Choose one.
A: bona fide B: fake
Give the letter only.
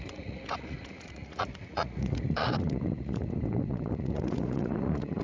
B